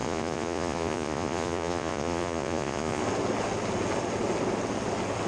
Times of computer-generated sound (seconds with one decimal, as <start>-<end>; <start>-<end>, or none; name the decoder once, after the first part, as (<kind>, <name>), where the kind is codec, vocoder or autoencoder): 0.0-3.0 (vocoder, Vocos)